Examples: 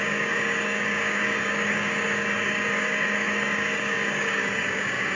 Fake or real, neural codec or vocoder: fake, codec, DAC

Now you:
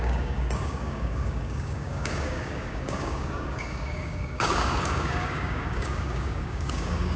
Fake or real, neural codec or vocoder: fake, codec, DAC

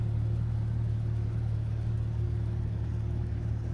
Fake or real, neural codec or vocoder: fake, codec, DAC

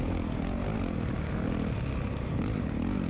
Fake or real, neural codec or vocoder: real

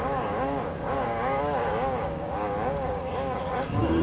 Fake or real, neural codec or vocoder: fake, codec, DAC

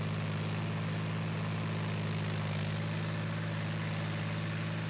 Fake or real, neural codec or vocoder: real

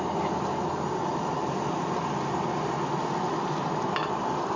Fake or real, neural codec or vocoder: real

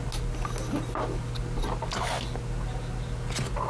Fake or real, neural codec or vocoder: real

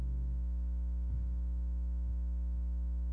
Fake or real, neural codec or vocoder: real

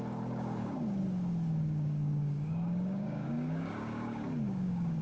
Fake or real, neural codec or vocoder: fake, codec, DAC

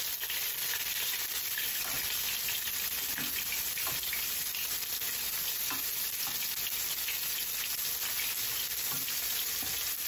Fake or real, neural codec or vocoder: real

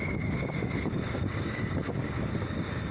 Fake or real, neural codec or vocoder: fake, codec, DAC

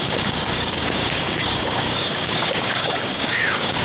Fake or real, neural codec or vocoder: fake, codec, DAC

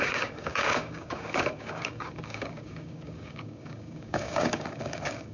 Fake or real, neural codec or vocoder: fake, codec, DAC